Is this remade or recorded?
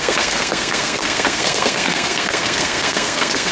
remade